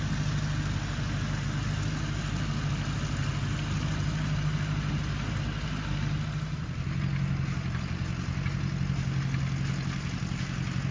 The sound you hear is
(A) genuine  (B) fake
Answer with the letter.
A